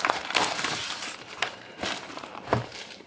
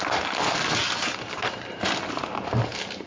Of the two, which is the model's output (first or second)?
first